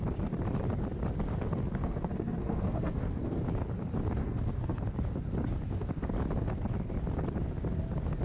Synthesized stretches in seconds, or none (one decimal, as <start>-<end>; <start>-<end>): 1.5-3.4; 4.2-4.8